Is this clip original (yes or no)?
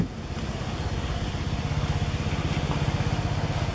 yes